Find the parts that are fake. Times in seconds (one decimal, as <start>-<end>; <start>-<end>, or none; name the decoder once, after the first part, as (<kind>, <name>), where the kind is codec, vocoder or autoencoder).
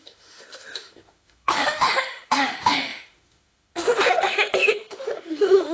0.0-5.7 (autoencoder, DAC-VAE)